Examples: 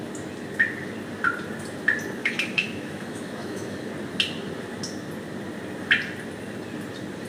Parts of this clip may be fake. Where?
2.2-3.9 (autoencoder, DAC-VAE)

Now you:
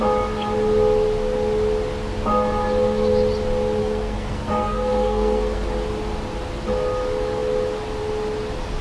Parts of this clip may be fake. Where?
3.8-5.7 (codec, SNAC)

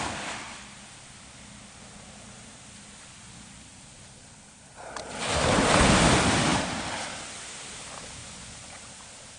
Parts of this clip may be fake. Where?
8.2-8.9 (vocoder, Vocos)

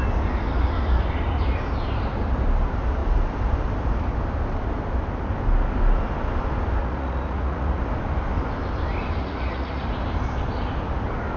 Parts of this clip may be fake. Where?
6.8-7.8 (vocoder, Vocos); 9.2-9.8

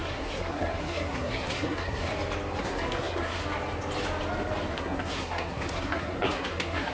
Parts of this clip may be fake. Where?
0.0-2.1 (codec, SNAC); 2.6-3.4; 4.7-6.9